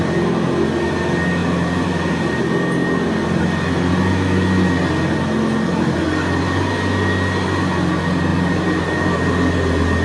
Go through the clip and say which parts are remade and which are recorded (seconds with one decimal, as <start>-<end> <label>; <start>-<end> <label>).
0.0-1.4 recorded; 1.4-2.4 remade; 2.4-8.3 recorded; 8.3-9.3 remade; 9.3-10.0 recorded